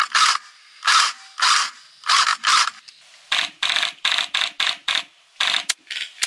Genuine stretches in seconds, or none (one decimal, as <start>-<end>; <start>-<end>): 0.0-6.3